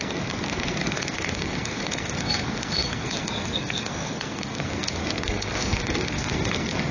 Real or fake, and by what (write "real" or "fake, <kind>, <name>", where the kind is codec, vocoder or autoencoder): fake, codec, SNAC